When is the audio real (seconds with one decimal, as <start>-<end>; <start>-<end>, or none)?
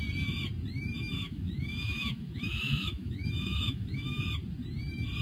0.0-1.1; 4.2-5.2